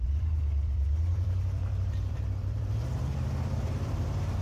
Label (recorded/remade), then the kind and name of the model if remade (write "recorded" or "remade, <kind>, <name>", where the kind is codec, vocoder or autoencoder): remade, vocoder, BigVGAN v2